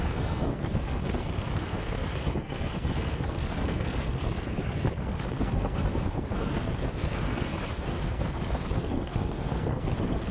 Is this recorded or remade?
remade